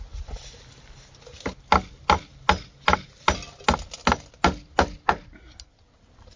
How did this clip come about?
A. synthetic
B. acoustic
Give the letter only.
B